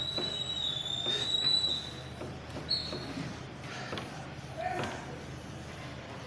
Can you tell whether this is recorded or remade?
remade